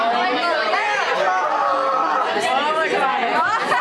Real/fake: real